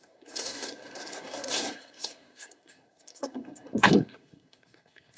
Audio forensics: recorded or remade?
remade